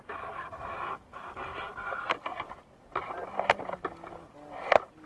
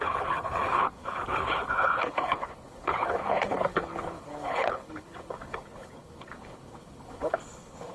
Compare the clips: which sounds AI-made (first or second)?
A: second